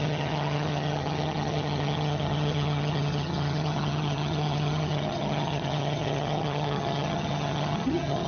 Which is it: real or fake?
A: fake